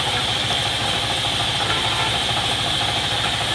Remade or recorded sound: recorded